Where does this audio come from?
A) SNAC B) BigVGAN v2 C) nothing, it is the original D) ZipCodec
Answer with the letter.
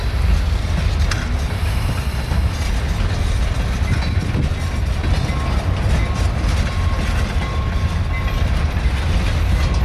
C